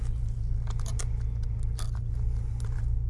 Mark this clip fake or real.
real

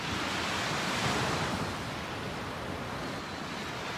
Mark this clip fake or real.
real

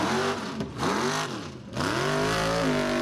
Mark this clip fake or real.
real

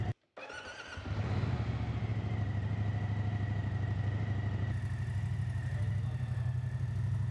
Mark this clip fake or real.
real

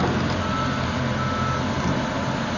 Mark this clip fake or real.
real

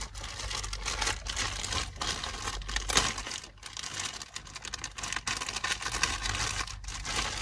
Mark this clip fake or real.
real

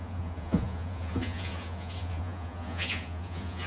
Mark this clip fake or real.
fake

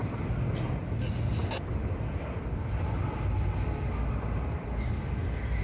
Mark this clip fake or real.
real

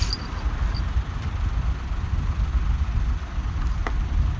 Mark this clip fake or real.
real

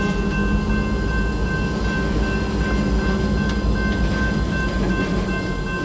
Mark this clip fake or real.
real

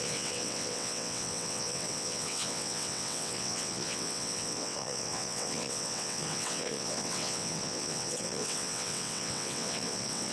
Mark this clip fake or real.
fake